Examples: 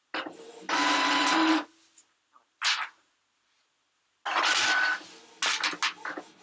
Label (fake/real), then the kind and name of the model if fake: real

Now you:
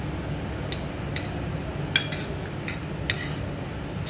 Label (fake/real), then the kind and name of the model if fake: real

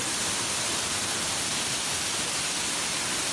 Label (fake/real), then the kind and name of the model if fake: real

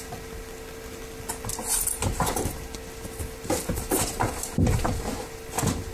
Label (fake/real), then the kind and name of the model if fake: real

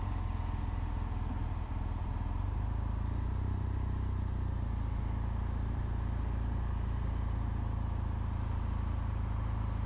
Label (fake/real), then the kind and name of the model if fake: real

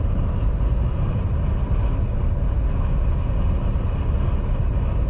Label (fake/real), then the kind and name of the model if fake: real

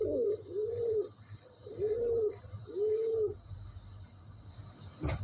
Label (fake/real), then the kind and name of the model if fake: real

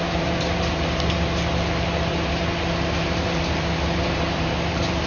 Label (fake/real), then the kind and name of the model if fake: fake, vocoder, BigVGAN v2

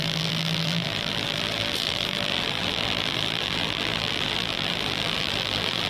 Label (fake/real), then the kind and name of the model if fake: fake, vocoder, BigVGAN v2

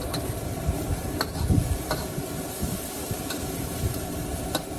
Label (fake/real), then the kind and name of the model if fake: fake, vocoder, BigVGAN v2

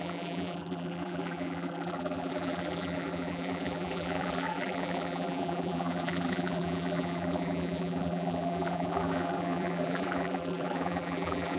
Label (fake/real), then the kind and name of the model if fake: fake, vocoder, BigVGAN v2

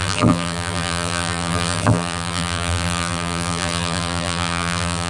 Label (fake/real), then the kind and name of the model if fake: fake, vocoder, BigVGAN v2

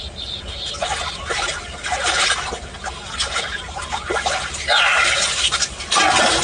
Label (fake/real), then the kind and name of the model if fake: real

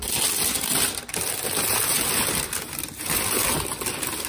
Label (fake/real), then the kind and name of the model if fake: real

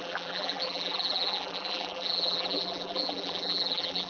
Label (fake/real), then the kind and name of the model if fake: fake, vocoder, BigVGAN v2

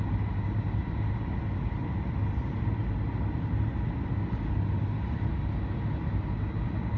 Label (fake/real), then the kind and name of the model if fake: real